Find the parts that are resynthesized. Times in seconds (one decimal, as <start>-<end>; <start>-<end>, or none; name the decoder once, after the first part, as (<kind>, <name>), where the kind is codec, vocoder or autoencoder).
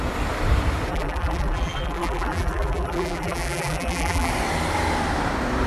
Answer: 0.9-4.3 (vocoder, BigVGAN v2)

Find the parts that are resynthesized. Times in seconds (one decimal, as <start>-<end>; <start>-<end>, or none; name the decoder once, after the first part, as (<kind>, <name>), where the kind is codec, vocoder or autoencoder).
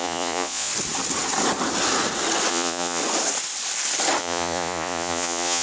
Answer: 0.0-0.7 (vocoder, Vocos); 2.5-3.0; 4.2-5.6